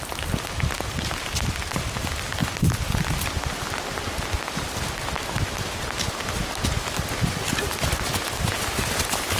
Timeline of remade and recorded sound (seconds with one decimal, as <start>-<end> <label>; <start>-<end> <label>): 0.0-9.4 recorded